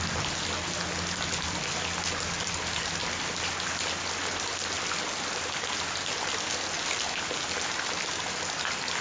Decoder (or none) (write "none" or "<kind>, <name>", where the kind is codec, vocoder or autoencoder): none